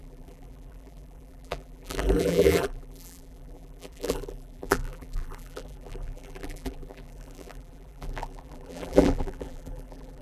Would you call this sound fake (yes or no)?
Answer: yes